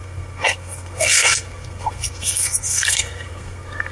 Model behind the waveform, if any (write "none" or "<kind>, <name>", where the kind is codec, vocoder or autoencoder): codec, SNAC